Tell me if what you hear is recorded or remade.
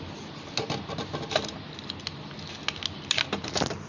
recorded